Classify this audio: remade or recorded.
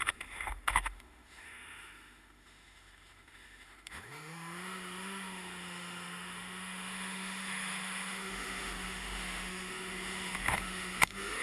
remade